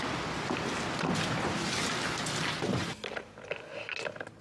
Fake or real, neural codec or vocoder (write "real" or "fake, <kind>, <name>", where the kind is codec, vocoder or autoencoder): real